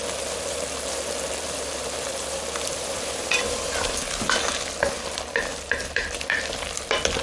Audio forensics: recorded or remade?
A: remade